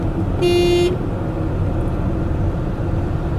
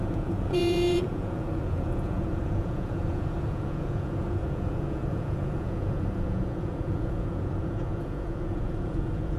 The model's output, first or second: second